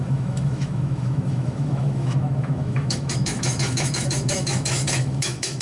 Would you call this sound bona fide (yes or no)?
no